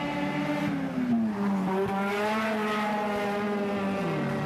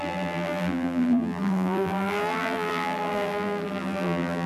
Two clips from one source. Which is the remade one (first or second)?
second